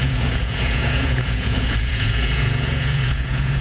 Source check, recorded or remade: remade